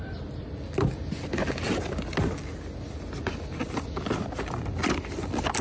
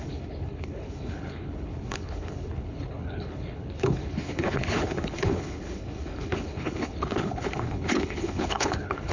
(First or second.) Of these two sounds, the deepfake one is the second